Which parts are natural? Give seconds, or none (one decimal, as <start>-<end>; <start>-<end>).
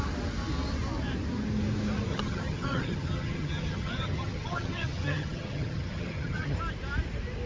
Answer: 0.0-2.1; 6.6-7.5